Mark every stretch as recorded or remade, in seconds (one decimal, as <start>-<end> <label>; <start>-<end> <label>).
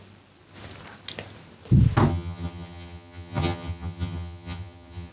0.0-2.1 recorded; 2.1-5.1 remade